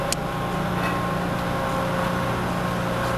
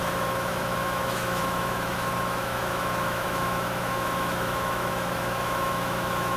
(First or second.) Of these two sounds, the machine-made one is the second